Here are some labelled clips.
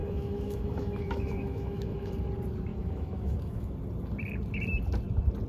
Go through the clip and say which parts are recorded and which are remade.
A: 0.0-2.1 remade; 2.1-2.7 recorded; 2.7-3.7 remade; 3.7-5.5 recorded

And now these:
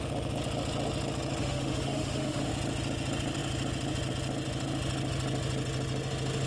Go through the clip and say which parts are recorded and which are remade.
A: 0.0-1.4 recorded; 1.4-2.5 remade; 2.5-6.5 recorded

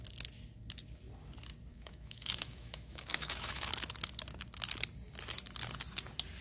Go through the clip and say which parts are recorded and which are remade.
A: 0.0-1.7 recorded; 1.7-3.7 remade; 3.7-6.4 recorded

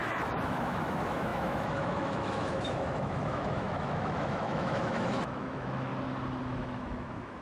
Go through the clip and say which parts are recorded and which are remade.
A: 0.0-5.9 remade; 5.9-6.4 recorded; 6.4-7.4 remade

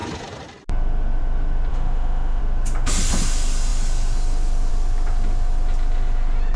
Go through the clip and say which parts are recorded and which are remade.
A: 0.0-1.7 recorded; 1.7-2.4 remade; 2.4-6.6 recorded